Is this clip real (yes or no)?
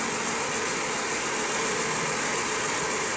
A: yes